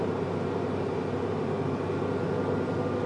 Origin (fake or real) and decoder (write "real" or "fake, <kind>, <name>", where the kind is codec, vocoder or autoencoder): real